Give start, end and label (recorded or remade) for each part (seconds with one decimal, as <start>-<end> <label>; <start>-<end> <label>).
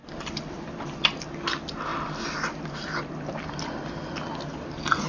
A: 0.0-1.0 remade; 1.0-5.1 recorded